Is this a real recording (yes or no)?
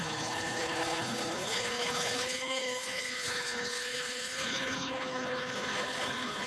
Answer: no